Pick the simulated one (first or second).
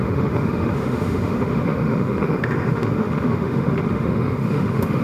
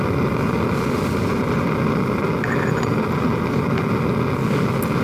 first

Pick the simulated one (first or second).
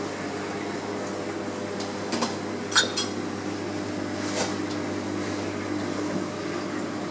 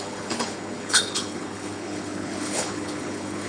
second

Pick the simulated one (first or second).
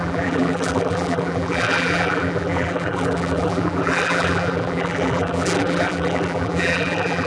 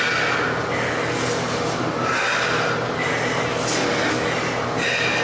first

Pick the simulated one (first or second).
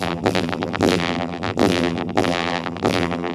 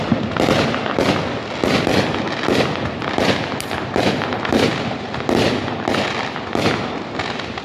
first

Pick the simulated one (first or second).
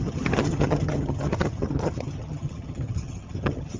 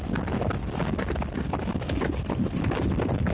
first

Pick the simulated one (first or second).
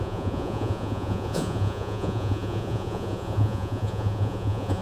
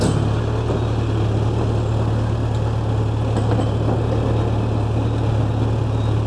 first